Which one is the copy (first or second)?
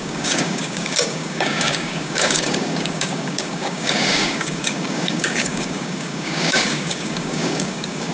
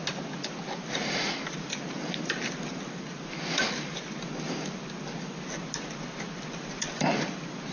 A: first